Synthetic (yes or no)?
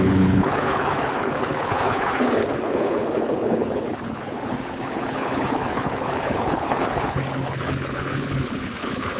yes